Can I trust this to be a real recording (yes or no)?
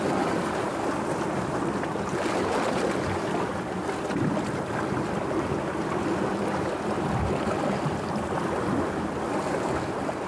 yes